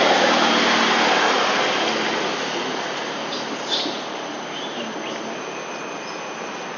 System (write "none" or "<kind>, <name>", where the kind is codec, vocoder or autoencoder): none